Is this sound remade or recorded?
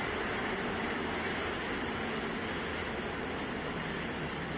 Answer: recorded